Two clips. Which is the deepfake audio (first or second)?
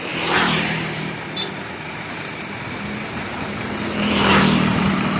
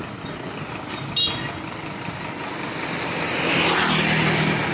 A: first